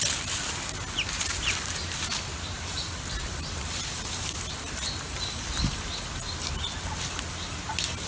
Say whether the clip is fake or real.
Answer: real